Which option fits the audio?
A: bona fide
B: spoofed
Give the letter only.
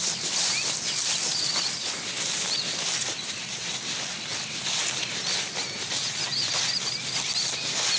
A